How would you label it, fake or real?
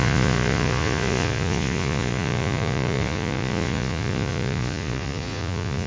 fake